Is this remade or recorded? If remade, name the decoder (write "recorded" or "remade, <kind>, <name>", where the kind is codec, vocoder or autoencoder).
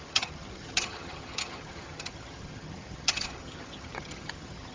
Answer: remade, vocoder, HiFi-GAN